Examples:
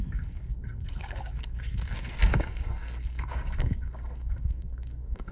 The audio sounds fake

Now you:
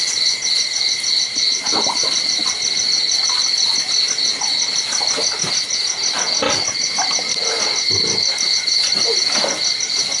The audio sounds real